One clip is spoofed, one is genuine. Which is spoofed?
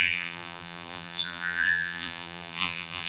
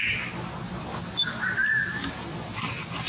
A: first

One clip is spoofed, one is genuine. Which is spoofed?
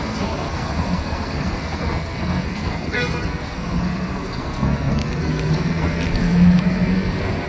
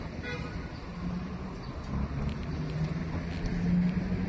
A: first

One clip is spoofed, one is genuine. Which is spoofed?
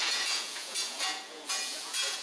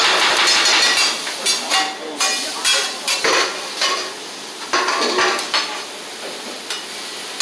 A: first